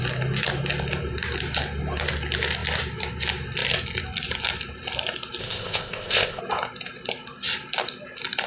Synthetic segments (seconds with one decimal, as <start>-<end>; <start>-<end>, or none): 5.4-6.4